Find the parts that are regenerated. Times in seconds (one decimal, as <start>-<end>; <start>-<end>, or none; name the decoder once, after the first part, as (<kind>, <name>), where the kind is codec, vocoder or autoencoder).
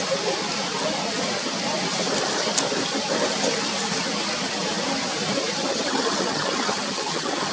5.7-7.5 (vocoder, HiFi-GAN)